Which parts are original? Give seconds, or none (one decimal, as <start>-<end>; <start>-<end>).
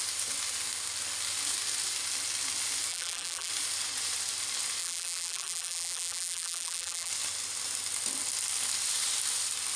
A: 0.0-2.9; 3.5-4.8; 7.1-9.8